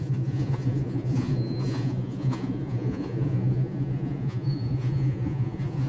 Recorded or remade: remade